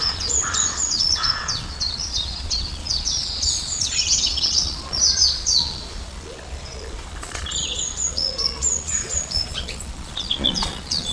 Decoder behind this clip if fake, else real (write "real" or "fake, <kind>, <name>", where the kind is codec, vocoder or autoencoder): fake, vocoder, Vocos